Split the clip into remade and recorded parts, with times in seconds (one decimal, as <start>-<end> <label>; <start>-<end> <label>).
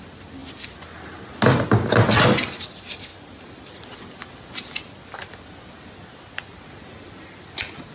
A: 0.0-7.9 recorded